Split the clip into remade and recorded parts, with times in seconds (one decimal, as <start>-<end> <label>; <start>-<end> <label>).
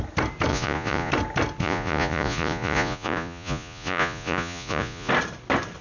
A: 0.0-0.5 recorded; 0.5-1.1 remade; 1.1-1.6 recorded; 1.6-5.1 remade; 5.1-5.8 recorded